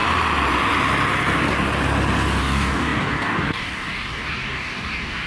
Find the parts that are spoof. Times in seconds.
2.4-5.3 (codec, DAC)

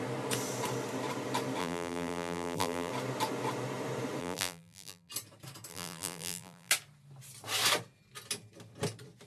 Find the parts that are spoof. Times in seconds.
1.6-2.9 (vocoder, BigVGAN v2); 4.2-5.1; 5.7-6.7

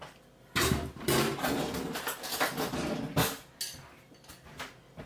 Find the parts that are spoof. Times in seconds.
0.6-2.2 (vocoder, BigVGAN v2)

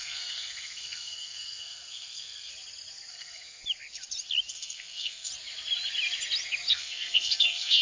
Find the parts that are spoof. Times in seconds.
0.0-2.5 (codec, SNAC); 3.1-3.6; 4.5-5.3; 6.7-7.8